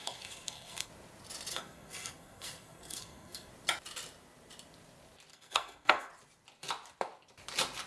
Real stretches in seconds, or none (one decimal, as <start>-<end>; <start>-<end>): 0.9-1.5; 3.5-5.3; 6.1-7.9